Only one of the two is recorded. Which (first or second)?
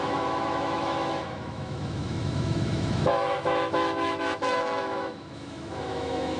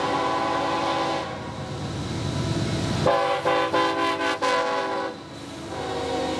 second